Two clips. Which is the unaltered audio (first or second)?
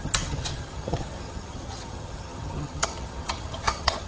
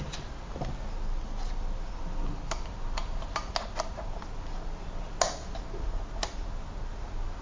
second